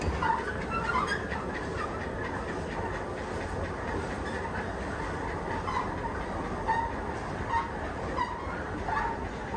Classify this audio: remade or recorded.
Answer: recorded